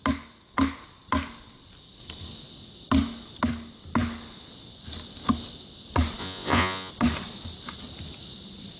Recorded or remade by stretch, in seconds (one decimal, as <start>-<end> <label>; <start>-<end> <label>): 0.0-6.2 recorded; 6.2-6.9 remade; 6.9-8.8 recorded